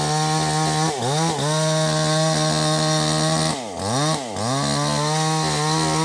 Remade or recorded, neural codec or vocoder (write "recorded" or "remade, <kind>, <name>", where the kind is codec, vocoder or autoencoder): recorded